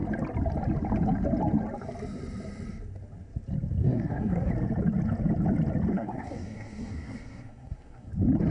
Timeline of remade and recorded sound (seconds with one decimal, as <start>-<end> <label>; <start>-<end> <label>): 0.0-3.8 recorded; 3.8-4.5 remade; 4.5-5.9 recorded; 5.9-8.1 remade; 8.1-8.5 recorded